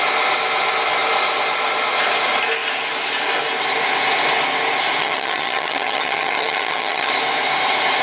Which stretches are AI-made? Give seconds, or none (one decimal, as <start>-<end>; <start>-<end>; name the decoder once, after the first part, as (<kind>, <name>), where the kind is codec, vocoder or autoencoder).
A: 5.0-7.1 (vocoder, HiFi-GAN)